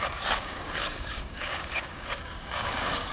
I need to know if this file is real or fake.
fake